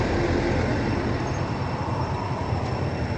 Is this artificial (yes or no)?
no